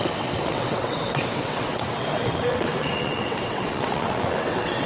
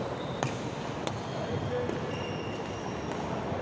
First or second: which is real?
second